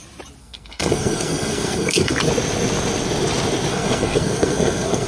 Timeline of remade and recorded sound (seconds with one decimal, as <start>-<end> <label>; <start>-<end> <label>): 0.0-0.4 recorded; 0.4-2.2 remade; 2.2-3.7 recorded; 3.7-5.1 remade